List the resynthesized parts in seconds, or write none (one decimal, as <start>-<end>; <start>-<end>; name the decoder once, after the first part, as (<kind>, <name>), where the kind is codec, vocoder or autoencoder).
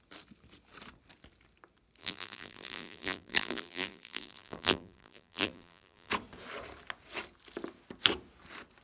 2.0-6.1 (vocoder, BigVGAN v2)